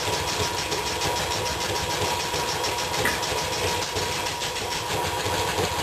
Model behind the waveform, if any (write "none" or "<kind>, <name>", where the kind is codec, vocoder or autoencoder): none